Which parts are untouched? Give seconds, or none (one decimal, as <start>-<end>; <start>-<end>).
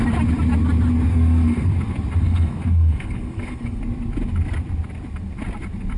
0.0-1.1; 1.7-2.2; 3.8-6.0